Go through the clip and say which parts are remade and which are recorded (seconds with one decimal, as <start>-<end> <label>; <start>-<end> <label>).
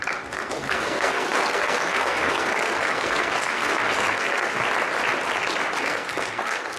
0.0-4.6 remade; 4.6-5.8 recorded; 5.8-6.8 remade